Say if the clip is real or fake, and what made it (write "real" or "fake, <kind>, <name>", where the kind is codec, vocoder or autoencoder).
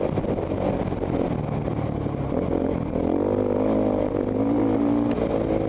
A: real